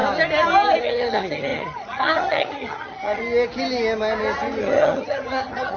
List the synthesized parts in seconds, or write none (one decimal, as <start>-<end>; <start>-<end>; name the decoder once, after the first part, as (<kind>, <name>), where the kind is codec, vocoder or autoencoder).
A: 0.8-3.2 (vocoder, HiFi-GAN); 4.6-5.8